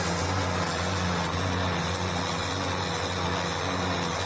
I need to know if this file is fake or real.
real